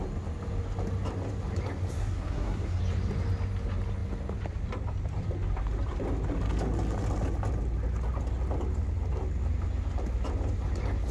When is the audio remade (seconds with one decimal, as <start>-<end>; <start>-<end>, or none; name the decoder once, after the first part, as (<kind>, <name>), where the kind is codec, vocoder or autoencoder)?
2.0-2.8 (codec, SNAC)